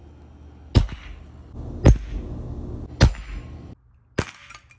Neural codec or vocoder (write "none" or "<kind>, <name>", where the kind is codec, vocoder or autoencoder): none